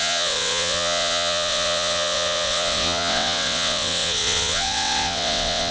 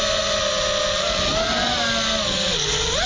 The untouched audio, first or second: second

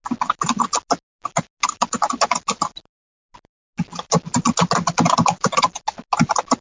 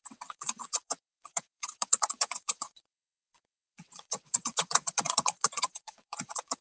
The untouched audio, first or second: first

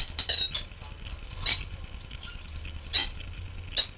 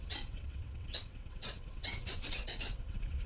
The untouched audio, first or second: first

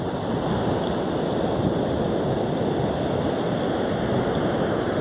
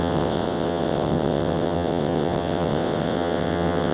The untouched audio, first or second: first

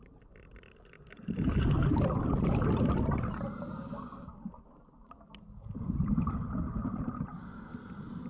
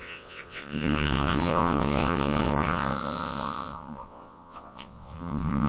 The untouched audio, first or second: first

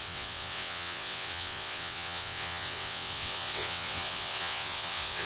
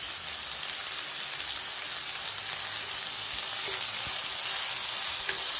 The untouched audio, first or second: second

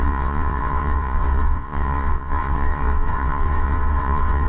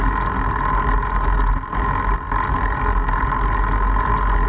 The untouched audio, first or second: second